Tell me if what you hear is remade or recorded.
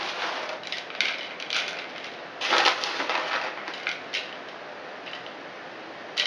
recorded